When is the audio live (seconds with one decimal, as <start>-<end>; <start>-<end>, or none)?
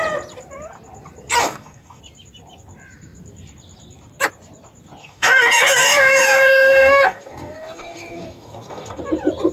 0.0-1.4; 2.0-5.0; 9.0-9.5